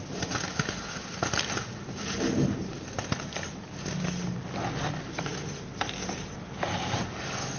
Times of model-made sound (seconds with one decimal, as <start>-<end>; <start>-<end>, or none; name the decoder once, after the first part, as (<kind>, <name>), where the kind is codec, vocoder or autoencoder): none